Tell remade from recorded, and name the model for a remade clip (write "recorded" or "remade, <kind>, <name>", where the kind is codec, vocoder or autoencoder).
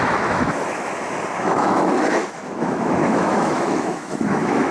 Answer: remade, autoencoder, DAC-VAE